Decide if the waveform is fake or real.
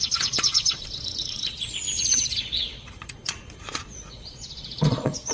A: fake